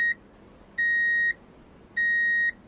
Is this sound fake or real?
real